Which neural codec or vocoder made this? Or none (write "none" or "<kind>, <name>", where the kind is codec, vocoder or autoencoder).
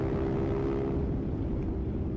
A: none